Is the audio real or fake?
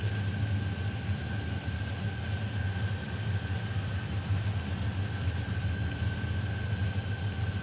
real